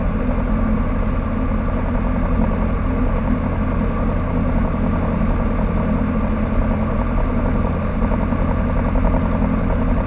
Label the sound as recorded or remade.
recorded